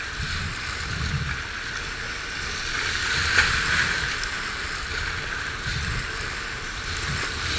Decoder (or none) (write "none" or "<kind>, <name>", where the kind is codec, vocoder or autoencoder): none